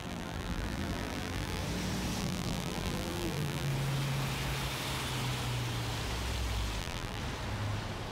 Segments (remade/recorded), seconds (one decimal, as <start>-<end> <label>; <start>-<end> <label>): 0.0-1.6 remade; 1.6-2.2 recorded; 2.2-3.7 remade; 3.7-6.8 recorded; 6.8-7.2 remade; 7.2-8.1 recorded